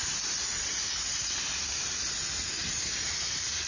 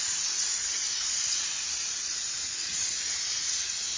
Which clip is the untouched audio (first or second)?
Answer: first